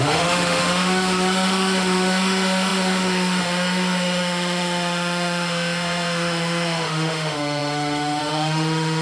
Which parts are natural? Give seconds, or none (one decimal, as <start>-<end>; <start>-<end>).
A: none